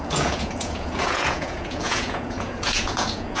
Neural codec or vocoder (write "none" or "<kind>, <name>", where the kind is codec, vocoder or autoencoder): vocoder, Vocos